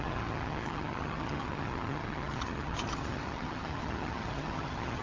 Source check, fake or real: fake